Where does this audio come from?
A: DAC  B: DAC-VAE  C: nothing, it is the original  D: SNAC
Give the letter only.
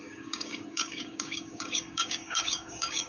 A